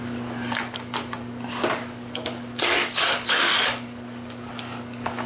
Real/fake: fake